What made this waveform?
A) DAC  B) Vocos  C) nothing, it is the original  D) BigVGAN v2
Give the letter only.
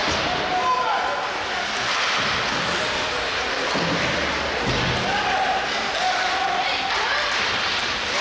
C